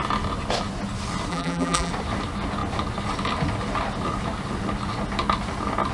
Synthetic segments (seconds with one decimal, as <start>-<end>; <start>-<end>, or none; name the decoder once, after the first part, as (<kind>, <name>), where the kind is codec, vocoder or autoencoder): 1.3-1.9 (vocoder, BigVGAN v2)

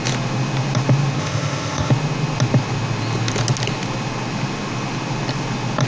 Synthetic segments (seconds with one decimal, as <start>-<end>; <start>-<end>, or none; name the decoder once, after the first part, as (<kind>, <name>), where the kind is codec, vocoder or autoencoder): 1.2-1.9 (codec, ZipCodec)